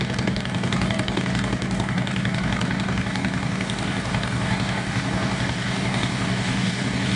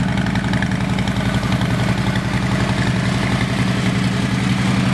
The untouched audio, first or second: second